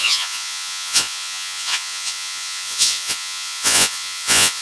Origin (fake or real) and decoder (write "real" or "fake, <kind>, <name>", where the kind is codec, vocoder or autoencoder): fake, vocoder, Vocos